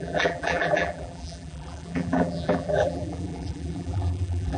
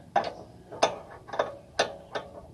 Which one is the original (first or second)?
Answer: second